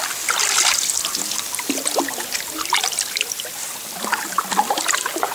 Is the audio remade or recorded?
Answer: recorded